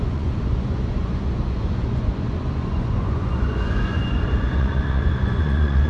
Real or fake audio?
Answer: fake